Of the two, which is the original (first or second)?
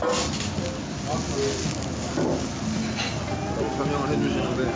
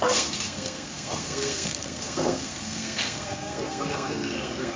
first